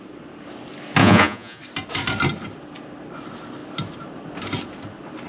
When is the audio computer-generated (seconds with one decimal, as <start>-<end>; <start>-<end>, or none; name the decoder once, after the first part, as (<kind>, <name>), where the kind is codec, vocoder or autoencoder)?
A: 1.0-1.6 (vocoder, Vocos)